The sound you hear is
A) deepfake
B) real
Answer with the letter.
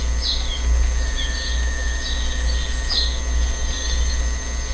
B